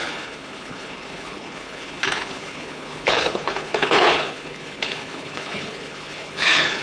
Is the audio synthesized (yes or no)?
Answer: yes